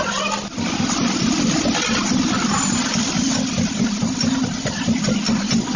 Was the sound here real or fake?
real